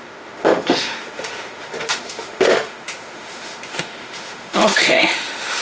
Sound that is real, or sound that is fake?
fake